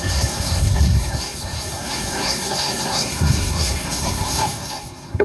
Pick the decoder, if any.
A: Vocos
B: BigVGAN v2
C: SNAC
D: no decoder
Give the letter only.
C